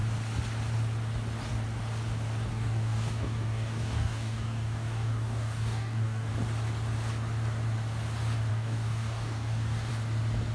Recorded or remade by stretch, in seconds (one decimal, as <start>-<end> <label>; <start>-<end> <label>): 0.0-2.5 recorded; 2.5-6.3 remade; 6.3-8.5 recorded; 8.5-9.9 remade; 9.9-10.5 recorded